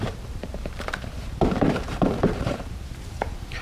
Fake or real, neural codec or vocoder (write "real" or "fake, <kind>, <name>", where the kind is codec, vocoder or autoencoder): fake, vocoder, BigVGAN v2